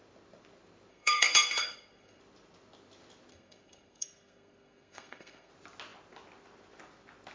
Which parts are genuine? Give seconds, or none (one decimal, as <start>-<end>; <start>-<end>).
0.0-0.9; 2.2-3.3; 5.5-7.3